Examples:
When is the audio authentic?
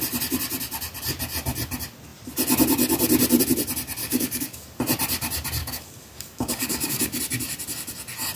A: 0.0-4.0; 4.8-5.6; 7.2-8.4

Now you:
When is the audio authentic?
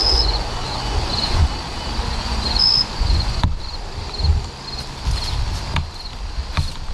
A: 1.5-2.1; 3.7-6.9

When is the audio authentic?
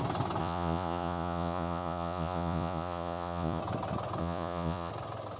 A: 0.0-0.4; 3.6-4.2; 4.9-5.4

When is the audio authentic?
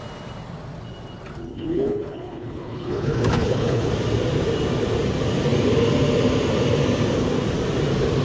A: 0.0-1.5; 3.9-8.2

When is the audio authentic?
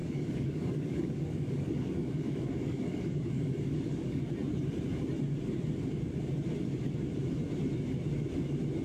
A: 4.2-8.8